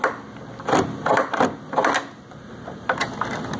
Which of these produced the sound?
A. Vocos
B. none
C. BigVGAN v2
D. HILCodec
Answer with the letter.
B